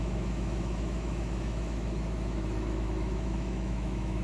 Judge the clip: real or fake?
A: fake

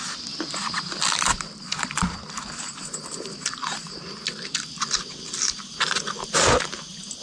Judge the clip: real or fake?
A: real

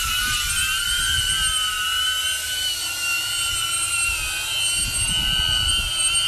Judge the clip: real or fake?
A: real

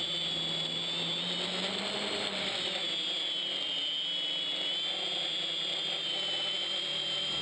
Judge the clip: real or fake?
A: real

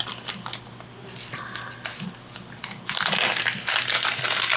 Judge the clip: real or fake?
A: real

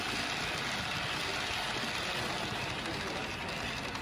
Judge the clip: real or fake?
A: real